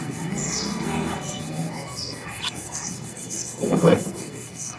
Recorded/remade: remade